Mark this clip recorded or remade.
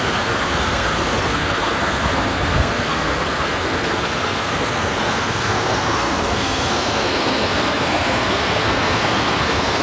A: remade